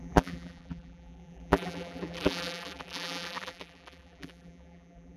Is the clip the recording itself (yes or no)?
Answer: no